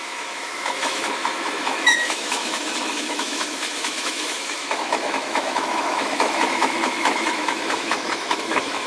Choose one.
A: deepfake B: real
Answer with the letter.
A